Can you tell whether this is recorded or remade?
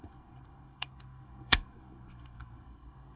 remade